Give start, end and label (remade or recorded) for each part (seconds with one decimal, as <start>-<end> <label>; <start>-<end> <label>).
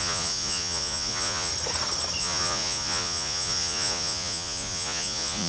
0.0-1.5 remade; 1.5-2.2 recorded; 2.2-5.5 remade